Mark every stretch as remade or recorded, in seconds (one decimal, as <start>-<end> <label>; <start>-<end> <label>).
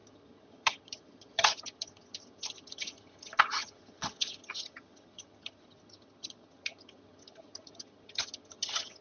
0.0-9.0 remade